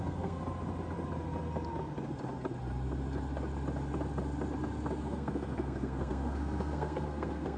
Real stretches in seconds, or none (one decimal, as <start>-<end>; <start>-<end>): 0.4-5.0